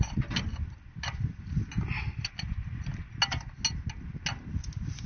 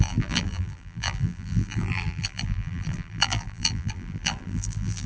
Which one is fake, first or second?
second